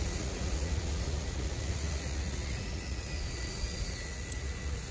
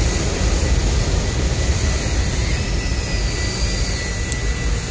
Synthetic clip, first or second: first